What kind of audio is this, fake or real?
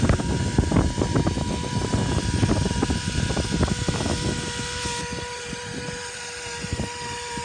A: real